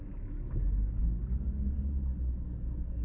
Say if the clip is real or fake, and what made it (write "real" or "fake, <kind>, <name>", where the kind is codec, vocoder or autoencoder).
real